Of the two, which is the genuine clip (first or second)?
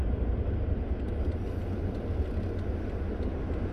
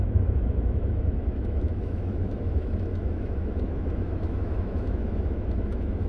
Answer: first